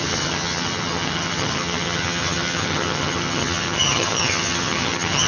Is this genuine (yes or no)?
no